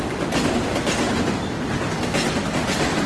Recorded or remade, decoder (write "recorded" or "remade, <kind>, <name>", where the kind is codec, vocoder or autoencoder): recorded